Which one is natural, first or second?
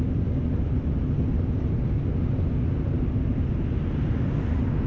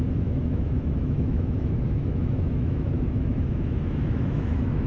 first